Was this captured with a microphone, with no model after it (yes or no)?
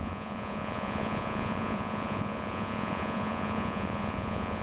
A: no